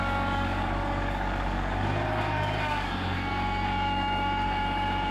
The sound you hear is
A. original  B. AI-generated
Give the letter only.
B